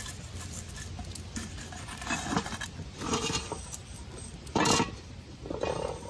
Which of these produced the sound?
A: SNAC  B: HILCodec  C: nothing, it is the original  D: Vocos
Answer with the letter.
C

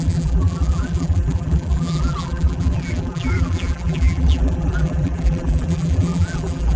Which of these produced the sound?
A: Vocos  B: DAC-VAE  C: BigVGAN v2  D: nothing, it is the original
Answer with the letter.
C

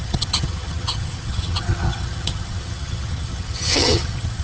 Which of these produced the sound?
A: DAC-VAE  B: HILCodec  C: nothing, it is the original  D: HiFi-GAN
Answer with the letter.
D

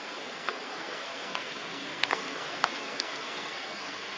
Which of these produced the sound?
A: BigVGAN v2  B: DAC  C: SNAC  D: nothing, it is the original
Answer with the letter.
C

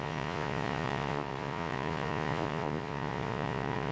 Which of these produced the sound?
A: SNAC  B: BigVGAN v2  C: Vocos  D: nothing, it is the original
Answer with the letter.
C